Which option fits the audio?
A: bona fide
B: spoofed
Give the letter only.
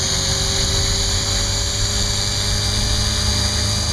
A